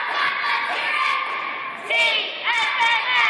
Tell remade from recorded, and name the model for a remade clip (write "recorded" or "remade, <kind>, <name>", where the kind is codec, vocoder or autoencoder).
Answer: recorded